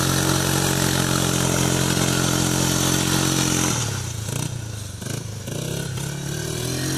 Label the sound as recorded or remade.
recorded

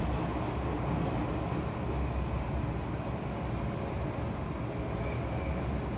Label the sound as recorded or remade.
recorded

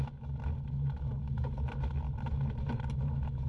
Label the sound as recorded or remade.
recorded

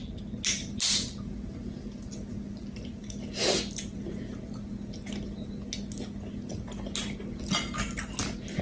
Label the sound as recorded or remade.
recorded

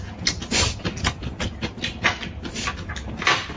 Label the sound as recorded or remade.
recorded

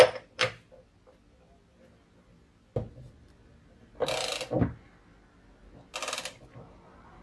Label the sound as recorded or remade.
recorded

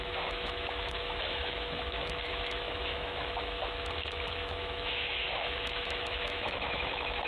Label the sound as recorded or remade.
remade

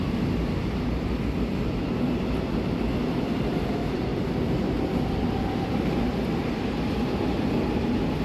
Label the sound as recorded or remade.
recorded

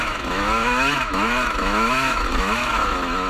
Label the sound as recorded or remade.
remade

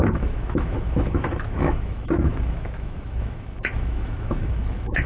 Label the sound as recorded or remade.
remade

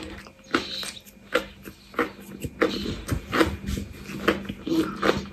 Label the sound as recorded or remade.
recorded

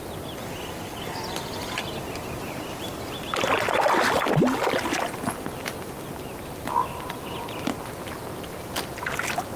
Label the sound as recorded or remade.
recorded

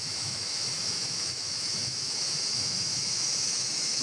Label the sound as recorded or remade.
remade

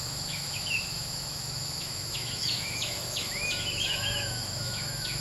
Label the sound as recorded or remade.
remade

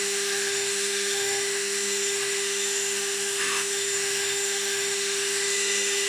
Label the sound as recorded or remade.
remade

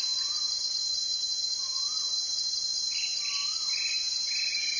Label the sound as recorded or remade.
recorded